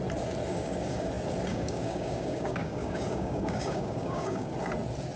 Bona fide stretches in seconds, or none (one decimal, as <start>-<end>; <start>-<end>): 0.0-0.5; 1.1-1.5; 4.5-5.2